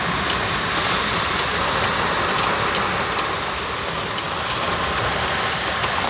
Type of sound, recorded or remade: recorded